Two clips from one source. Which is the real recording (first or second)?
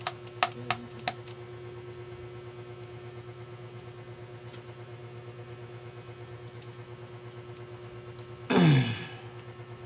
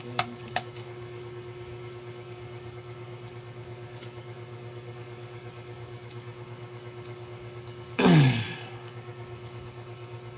first